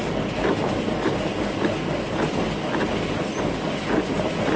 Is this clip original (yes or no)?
yes